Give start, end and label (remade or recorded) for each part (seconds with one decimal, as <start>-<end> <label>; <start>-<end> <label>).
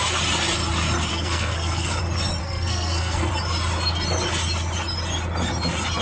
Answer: 0.0-1.1 recorded; 1.1-2.0 remade; 2.0-2.4 recorded; 2.4-3.3 remade; 3.3-6.0 recorded